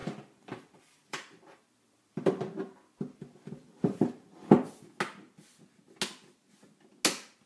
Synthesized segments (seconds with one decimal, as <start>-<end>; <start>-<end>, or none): 0.0-4.5